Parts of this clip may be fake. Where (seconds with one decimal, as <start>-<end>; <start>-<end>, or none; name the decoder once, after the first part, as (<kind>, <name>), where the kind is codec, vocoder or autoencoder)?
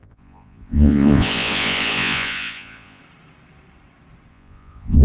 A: 0.0-3.0 (vocoder, Vocos); 4.3-5.0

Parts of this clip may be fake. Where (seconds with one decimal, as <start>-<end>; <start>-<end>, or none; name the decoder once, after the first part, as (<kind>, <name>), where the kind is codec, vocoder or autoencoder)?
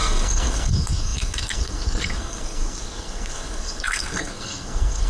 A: 0.0-5.1 (codec, SNAC)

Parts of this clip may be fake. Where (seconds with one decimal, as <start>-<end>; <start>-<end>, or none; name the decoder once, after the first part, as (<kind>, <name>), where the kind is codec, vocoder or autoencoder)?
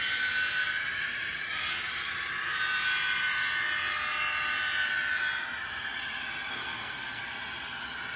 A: 6.5-7.2 (codec, SNAC)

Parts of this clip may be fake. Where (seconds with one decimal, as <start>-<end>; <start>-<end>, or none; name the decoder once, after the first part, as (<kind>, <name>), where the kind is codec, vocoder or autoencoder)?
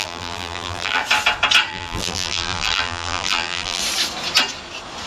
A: 0.0-1.0 (vocoder, BigVGAN v2); 1.7-3.8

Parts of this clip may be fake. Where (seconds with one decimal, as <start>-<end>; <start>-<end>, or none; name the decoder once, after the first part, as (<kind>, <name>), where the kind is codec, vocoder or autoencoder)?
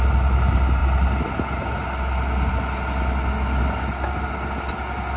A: none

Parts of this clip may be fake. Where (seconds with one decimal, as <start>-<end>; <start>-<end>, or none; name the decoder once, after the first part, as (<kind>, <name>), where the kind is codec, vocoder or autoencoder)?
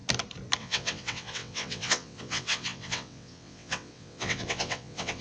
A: 0.6-5.2 (vocoder, WaveNeXt)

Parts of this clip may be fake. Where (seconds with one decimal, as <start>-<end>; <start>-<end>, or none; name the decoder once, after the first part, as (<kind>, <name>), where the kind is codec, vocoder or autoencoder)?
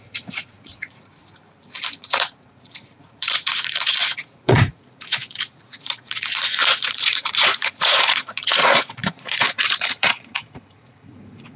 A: 0.0-1.1 (vocoder, Vocos); 2.0-11.6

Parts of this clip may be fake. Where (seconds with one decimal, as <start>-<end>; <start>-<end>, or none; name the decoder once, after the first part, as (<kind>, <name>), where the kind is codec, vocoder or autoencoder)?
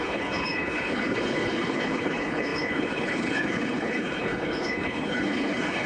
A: 0.0-5.9 (codec, HILCodec)